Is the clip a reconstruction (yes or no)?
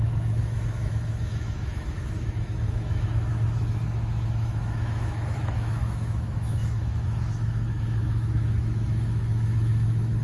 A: yes